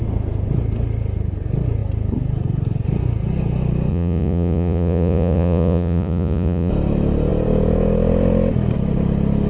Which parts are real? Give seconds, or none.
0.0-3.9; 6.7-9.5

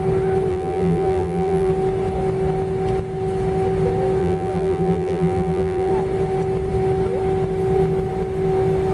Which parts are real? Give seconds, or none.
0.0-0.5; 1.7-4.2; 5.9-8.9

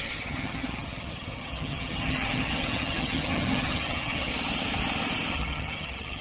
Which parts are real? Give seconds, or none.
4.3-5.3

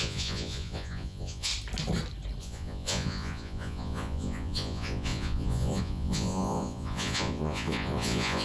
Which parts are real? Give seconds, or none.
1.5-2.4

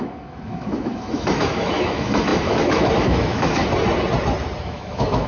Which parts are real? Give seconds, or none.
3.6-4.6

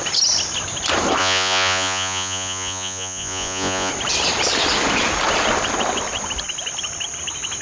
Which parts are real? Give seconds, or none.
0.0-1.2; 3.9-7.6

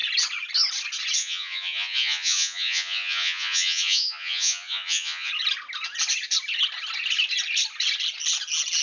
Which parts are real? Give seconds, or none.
0.0-1.2; 5.3-8.8

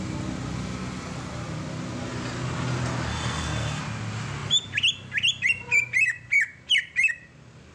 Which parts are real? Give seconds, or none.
0.0-3.1; 3.8-7.7